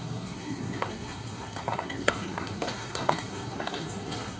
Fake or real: fake